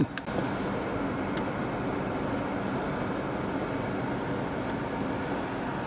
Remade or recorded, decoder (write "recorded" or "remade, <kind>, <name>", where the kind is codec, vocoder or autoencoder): recorded